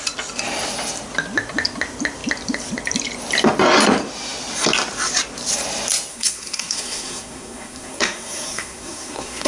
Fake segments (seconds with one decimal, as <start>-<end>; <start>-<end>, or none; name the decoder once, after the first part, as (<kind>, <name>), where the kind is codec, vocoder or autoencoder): 6.1-9.5 (codec, SNAC)